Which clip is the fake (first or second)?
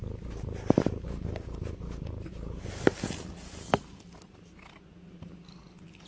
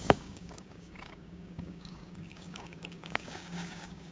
second